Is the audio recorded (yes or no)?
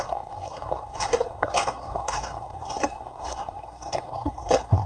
no